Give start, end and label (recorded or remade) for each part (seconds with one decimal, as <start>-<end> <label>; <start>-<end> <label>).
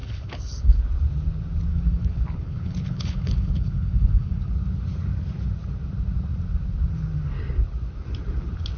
0.0-0.8 remade; 0.8-1.7 recorded; 1.7-4.5 remade; 4.5-8.8 recorded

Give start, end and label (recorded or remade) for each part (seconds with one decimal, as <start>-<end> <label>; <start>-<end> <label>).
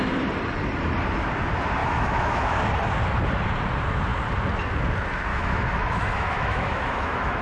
0.0-1.8 recorded; 1.8-2.6 remade; 2.6-5.3 recorded; 5.3-7.4 remade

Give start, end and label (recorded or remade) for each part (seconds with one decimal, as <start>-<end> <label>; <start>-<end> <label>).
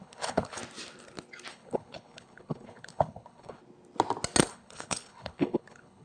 0.0-0.6 remade; 0.6-1.5 recorded; 1.5-3.6 remade; 3.6-4.5 recorded; 4.5-6.0 remade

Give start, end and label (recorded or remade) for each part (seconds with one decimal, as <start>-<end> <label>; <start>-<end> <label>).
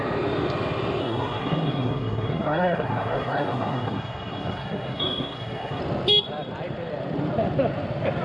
0.0-1.0 recorded; 1.0-5.8 remade; 5.8-8.2 recorded